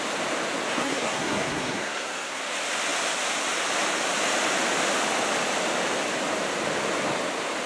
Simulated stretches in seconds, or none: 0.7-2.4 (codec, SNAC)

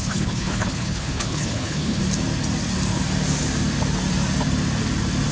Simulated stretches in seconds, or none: 0.0-2.0 (codec, HILCodec)